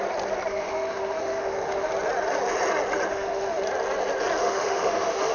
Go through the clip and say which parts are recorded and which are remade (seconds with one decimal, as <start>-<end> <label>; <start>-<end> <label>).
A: 0.0-0.5 recorded; 0.5-1.9 remade; 1.9-3.1 recorded; 3.1-3.6 remade; 3.6-4.4 recorded; 4.4-5.3 remade